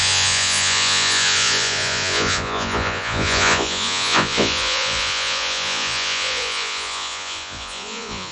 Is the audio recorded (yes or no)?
no